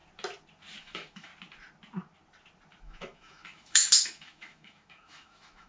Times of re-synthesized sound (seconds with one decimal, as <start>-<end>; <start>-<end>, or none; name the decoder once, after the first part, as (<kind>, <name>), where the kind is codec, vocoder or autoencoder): 0.8-1.3 (autoencoder, DAC-VAE); 2.8-5.7